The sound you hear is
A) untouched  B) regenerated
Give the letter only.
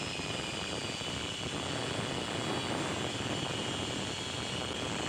A